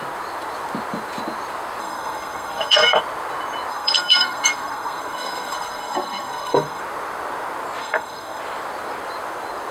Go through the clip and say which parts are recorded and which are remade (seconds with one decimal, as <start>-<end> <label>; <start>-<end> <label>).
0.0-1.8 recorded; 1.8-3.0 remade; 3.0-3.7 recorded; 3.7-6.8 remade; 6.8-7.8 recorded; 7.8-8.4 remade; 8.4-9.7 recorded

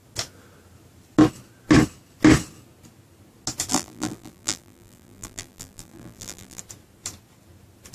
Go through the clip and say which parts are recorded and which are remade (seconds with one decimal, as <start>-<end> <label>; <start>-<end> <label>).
0.0-3.7 recorded; 3.7-6.6 remade; 6.6-7.9 recorded

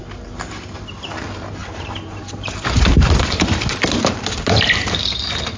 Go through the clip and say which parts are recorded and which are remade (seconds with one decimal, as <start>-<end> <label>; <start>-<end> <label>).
0.0-1.6 recorded; 1.6-5.0 remade; 5.0-5.6 recorded

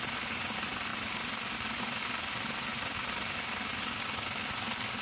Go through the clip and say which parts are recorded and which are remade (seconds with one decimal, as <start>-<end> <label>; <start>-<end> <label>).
0.0-5.0 recorded

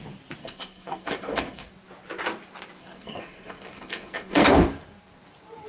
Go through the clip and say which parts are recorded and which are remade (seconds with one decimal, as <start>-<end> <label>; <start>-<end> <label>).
0.0-0.4 recorded; 0.4-1.7 remade; 1.7-2.8 recorded; 2.8-4.5 remade; 4.5-5.7 recorded

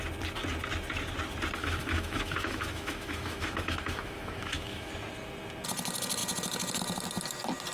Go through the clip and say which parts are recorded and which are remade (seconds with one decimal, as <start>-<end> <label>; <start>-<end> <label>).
0.0-1.6 recorded; 1.6-4.9 remade; 4.9-7.7 recorded

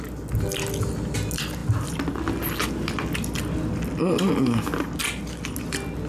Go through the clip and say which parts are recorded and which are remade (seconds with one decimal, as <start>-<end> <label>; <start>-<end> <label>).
0.0-6.1 recorded

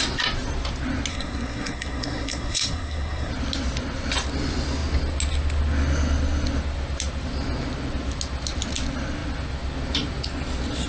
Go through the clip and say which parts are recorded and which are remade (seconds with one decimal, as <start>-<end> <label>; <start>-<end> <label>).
0.0-1.1 recorded; 1.1-3.3 remade; 3.3-10.9 recorded